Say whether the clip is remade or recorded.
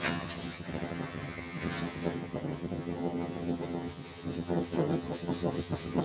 remade